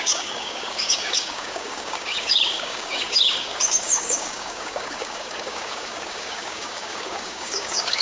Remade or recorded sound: remade